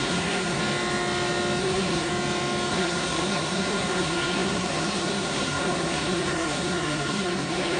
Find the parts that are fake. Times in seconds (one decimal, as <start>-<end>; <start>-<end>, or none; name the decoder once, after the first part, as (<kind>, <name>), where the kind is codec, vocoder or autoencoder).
0.0-0.6 (codec, SNAC); 1.6-2.1; 2.7-7.8